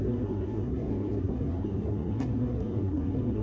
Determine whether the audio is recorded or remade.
remade